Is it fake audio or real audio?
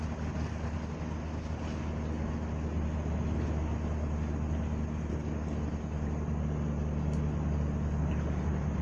real